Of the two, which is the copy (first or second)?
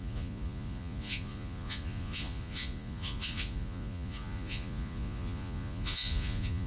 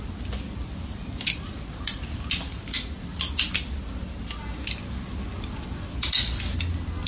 first